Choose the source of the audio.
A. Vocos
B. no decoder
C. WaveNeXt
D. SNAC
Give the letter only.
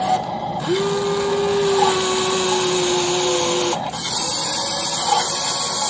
B